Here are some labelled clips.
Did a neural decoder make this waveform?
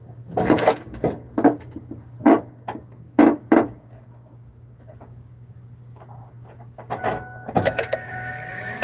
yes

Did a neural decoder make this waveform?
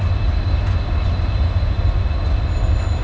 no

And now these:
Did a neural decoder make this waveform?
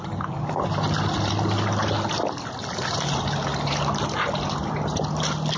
no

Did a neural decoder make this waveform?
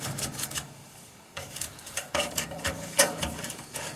yes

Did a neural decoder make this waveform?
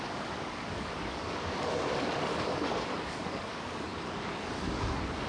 yes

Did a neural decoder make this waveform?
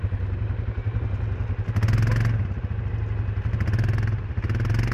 no